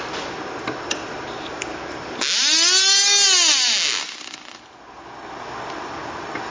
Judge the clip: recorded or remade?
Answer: recorded